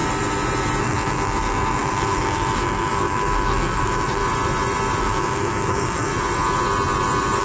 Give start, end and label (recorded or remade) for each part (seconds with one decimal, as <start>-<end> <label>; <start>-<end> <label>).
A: 0.0-0.8 recorded; 0.8-4.2 remade; 4.2-5.0 recorded; 5.0-6.1 remade; 6.1-7.4 recorded